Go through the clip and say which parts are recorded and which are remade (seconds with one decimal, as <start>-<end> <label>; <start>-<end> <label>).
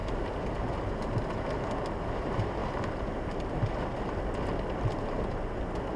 0.0-0.7 remade; 0.7-6.0 recorded